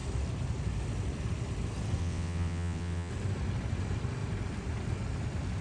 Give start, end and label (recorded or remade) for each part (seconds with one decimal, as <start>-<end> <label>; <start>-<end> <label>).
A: 0.0-2.0 recorded; 2.0-3.1 remade; 3.1-5.6 recorded